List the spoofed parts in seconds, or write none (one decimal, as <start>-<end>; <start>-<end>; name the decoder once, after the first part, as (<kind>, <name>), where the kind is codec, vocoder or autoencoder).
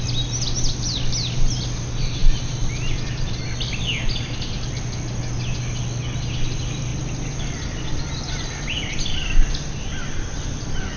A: none